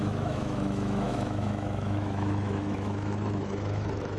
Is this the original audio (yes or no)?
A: no